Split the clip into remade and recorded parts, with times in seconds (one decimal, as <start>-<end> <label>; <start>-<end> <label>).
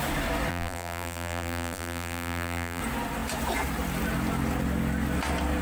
0.0-0.5 recorded; 0.5-2.8 remade; 2.8-5.6 recorded